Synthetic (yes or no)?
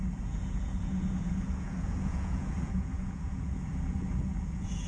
yes